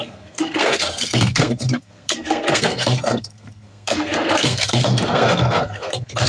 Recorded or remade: remade